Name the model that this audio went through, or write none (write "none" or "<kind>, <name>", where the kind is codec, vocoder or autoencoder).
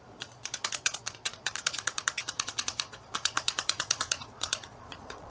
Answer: vocoder, Vocos